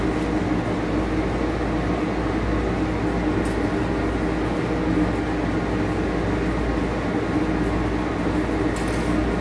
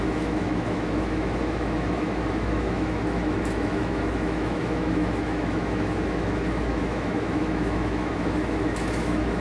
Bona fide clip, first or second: first